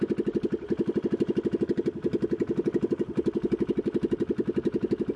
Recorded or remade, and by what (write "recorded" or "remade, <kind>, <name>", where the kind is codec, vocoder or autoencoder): recorded